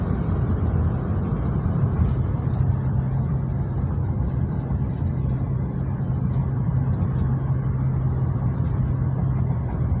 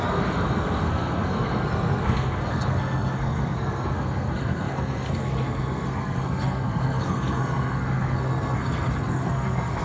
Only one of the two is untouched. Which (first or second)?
first